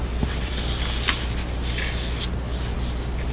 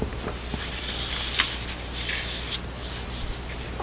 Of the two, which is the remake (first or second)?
second